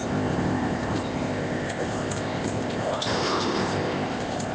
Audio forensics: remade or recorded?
remade